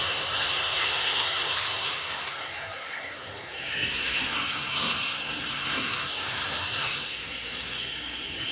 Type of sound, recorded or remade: remade